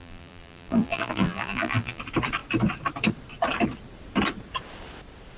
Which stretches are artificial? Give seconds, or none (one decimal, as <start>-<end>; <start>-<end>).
0.0-2.0